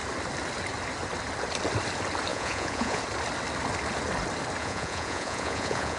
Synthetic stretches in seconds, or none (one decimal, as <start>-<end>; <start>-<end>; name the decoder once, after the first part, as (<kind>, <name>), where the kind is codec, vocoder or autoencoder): 2.3-3.0 (vocoder, Vocos); 4.6-6.0